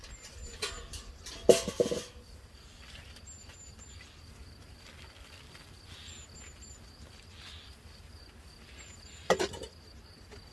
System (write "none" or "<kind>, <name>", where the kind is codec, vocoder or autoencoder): none